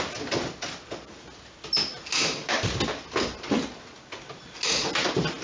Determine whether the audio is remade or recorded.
recorded